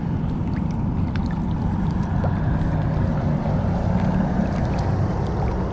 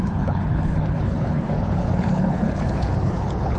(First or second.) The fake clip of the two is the second